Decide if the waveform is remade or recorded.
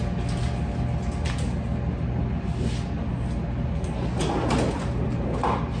recorded